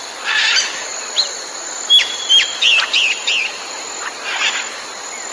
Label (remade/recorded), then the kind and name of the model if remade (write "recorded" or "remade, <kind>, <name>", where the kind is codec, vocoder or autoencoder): recorded